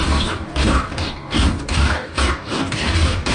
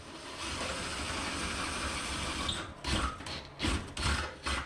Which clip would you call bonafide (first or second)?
second